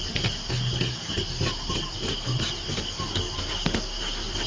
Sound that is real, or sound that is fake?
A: real